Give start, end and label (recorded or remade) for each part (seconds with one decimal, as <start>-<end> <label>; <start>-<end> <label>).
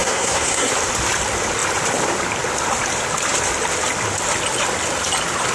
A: 0.0-0.7 remade; 0.7-5.5 recorded